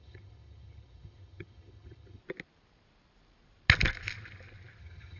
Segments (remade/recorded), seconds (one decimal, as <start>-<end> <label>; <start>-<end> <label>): 0.0-2.2 remade; 2.2-4.8 recorded; 4.8-5.2 remade